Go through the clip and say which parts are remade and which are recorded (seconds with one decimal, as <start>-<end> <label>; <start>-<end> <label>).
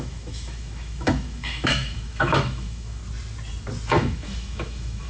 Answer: 0.0-3.0 remade; 3.0-3.9 recorded; 3.9-5.1 remade